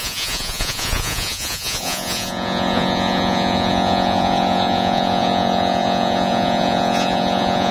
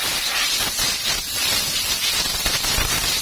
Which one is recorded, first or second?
second